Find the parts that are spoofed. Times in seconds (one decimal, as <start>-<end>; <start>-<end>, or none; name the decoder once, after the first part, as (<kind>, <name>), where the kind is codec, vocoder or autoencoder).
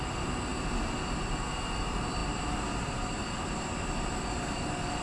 0.0-0.5 (vocoder, BigVGAN v2); 1.2-5.0